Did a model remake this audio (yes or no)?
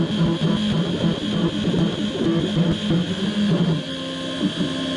no